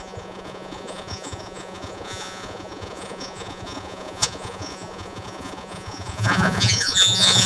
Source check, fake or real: fake